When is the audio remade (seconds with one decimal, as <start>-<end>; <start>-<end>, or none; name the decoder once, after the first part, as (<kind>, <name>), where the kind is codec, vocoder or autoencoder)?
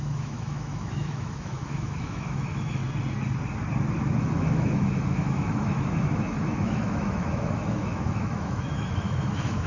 0.0-2.8 (autoencoder, DAC-VAE); 4.2-9.7